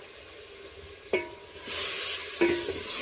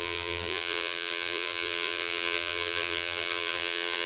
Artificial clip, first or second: second